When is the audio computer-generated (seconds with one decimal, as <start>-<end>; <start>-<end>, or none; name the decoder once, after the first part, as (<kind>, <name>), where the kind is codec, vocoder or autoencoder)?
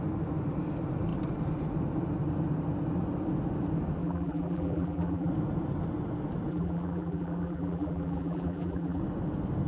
4.0-5.3 (vocoder, BigVGAN v2); 6.5-9.0